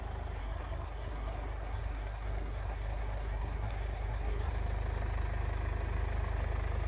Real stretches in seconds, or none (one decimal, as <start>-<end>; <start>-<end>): 0.0-0.4; 4.5-6.9

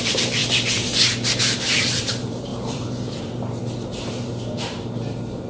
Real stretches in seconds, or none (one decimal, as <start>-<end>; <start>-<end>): 0.4-1.6

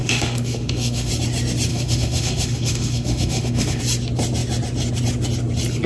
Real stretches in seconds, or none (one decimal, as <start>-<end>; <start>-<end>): 1.1-1.7; 3.8-5.9

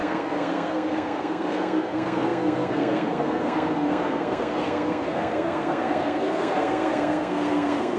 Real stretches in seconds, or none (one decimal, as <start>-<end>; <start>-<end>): none

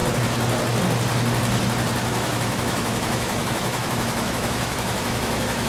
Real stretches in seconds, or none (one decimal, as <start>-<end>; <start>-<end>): 0.0-2.1

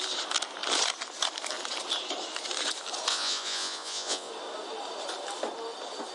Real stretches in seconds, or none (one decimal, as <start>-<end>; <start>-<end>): 0.0-3.1; 4.3-6.1

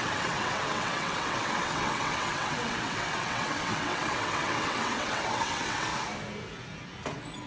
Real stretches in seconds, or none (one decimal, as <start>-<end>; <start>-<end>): 5.9-7.5

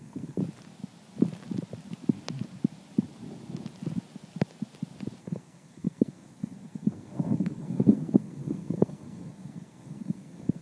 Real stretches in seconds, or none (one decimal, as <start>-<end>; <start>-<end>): 0.4-5.2